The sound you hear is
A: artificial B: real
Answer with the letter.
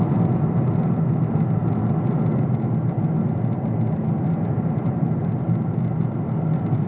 B